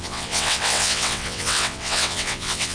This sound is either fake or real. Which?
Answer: fake